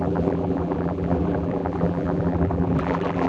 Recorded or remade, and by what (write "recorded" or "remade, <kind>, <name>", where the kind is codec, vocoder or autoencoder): remade, vocoder, BigVGAN v2